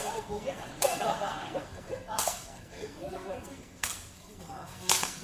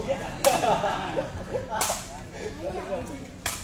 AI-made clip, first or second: first